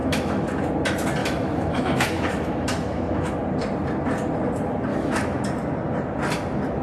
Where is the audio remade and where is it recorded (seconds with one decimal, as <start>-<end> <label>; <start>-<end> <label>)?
0.0-0.6 remade; 0.6-1.2 recorded; 1.2-3.4 remade; 3.4-4.9 recorded; 4.9-5.4 remade; 5.4-6.8 recorded